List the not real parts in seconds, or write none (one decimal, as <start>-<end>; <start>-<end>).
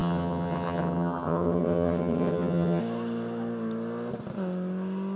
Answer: 0.0-2.8